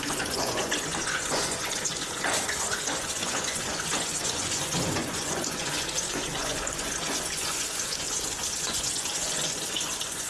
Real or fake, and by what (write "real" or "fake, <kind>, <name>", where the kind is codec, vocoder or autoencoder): fake, vocoder, Vocos